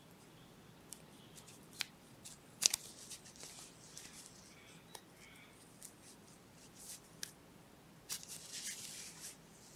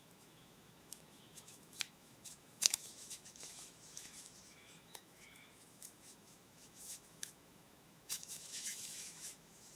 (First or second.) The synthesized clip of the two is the second